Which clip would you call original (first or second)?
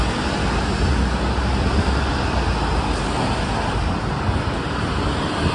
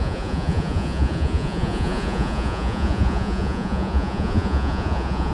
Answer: first